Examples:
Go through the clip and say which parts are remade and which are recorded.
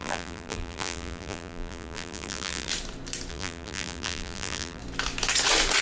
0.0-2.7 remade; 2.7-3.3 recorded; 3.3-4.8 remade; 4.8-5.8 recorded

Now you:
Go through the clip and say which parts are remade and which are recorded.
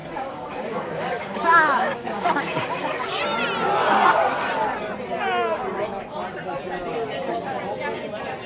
0.0-3.2 remade; 3.2-8.5 recorded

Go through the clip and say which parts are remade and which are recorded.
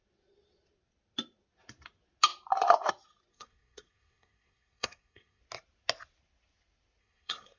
0.0-3.3 recorded; 3.3-5.4 remade; 5.4-7.0 recorded; 7.0-7.6 remade